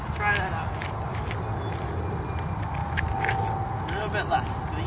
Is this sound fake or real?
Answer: real